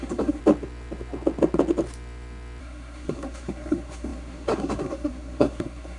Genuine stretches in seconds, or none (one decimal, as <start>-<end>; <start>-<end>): 0.4-2.6